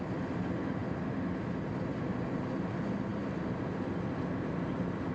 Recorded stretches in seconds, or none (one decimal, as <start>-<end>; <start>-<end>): 0.0-5.1